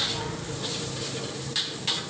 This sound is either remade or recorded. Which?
recorded